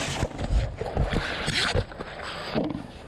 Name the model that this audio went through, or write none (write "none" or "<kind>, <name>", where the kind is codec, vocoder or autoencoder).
none